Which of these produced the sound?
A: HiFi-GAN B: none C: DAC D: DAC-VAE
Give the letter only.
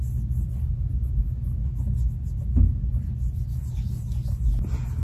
B